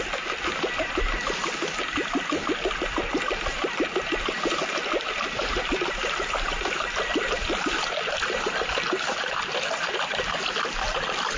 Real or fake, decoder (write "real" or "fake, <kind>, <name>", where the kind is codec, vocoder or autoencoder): real